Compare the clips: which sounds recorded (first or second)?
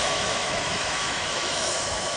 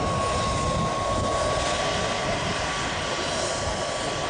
second